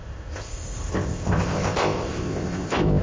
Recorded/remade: remade